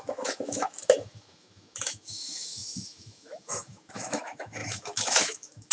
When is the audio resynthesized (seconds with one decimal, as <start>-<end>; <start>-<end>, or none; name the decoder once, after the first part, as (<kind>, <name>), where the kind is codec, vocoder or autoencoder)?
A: 0.0-5.7 (autoencoder, DAC-VAE)